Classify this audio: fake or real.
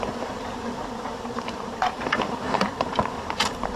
fake